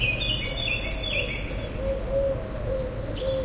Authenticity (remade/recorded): recorded